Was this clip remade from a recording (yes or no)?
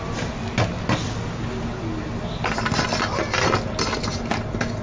no